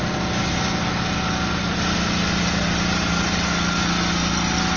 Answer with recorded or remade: recorded